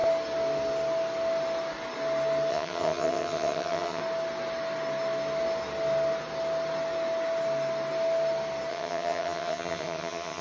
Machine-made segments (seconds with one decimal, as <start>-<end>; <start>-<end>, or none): 2.5-4.0; 8.7-10.4